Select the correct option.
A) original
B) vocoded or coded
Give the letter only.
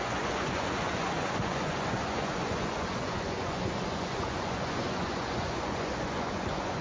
B